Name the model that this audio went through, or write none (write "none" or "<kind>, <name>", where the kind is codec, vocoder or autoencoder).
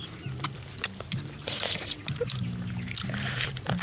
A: vocoder, BigVGAN v2